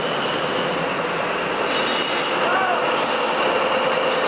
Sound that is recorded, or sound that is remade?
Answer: recorded